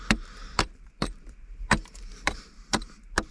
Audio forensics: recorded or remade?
remade